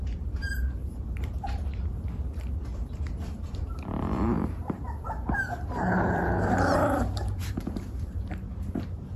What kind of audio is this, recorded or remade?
remade